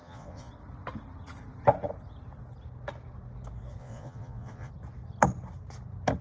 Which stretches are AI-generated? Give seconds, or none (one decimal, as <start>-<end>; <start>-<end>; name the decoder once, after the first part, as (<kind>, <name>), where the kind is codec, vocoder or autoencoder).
0.0-0.5 (vocoder, Vocos); 3.8-4.7

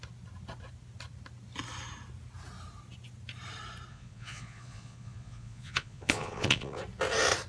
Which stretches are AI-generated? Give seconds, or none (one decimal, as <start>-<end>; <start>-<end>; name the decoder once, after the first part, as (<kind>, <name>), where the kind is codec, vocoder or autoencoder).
3.9-6.8 (vocoder, Vocos)

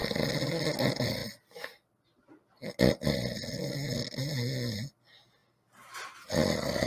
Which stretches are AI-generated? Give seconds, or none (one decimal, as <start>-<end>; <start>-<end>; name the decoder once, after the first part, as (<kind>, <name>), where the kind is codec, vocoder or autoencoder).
none

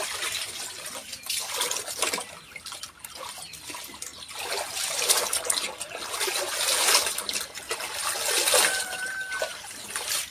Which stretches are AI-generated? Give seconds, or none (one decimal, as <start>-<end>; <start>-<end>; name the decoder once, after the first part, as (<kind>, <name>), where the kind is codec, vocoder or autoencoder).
none

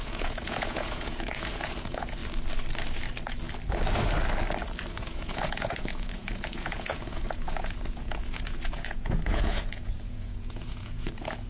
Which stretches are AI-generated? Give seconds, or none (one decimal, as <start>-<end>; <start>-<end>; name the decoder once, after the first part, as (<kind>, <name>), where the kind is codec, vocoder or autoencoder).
0.0-2.2 (vocoder, Vocos); 4.9-11.5

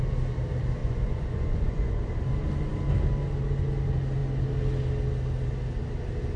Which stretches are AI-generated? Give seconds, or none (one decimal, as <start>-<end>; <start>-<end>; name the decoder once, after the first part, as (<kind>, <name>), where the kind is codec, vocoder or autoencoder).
0.8-2.0 (vocoder, Vocos)